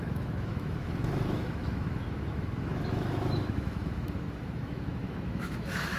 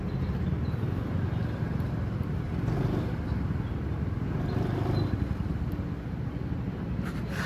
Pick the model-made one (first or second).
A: first